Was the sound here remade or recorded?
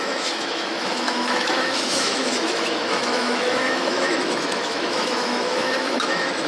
remade